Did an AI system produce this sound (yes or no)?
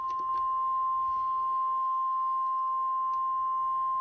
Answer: no